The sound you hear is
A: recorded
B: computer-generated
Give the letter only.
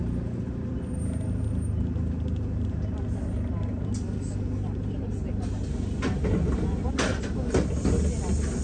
A